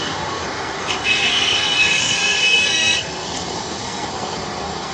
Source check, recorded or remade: remade